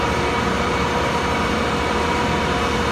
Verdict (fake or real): fake